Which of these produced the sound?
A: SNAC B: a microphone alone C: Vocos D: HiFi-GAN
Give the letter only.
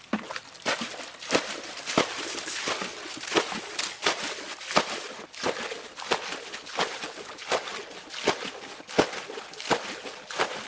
B